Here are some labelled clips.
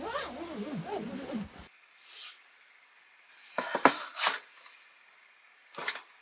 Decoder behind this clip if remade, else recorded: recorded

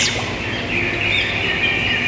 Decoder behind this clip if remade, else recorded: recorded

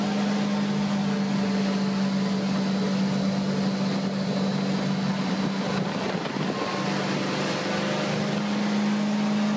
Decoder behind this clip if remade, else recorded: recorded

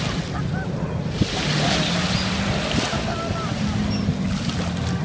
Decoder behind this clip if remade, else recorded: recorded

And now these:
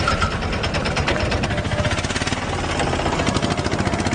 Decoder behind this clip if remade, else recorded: recorded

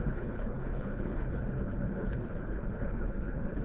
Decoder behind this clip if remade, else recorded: remade, codec, HILCodec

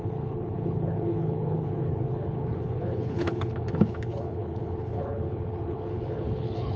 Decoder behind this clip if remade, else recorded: remade, codec, HILCodec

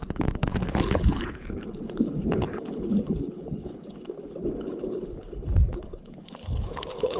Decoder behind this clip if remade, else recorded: remade, codec, HILCodec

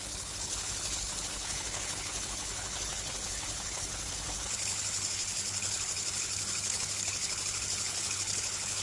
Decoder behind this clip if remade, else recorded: remade, codec, HILCodec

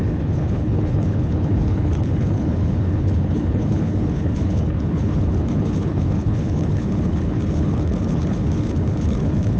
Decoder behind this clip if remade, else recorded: remade, codec, HILCodec